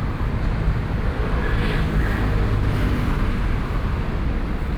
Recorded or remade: recorded